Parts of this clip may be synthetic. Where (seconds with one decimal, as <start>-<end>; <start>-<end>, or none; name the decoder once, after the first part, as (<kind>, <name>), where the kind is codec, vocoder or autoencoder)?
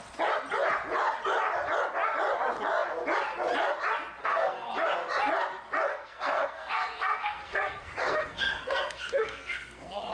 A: 4.2-4.7 (codec, SNAC); 5.9-10.1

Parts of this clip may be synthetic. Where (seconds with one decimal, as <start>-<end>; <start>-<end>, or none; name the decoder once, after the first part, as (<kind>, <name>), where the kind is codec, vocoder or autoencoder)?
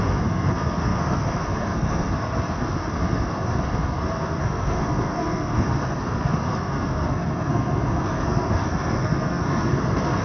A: 0.0-10.2 (codec, SNAC)